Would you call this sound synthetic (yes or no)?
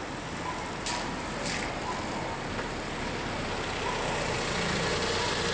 no